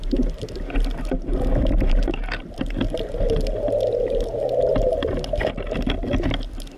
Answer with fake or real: real